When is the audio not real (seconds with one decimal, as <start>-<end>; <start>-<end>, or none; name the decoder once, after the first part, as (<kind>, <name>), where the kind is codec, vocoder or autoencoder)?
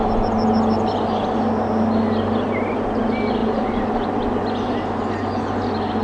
3.4-4.2 (vocoder, BigVGAN v2)